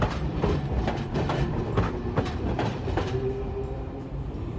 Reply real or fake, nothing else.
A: fake